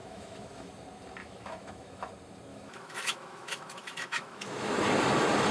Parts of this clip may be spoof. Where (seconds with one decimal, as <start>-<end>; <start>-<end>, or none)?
0.0-0.7; 1.2-2.1; 2.5-4.7